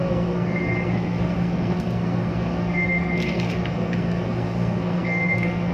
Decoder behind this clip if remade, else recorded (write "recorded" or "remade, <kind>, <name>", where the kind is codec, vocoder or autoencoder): remade, codec, SNAC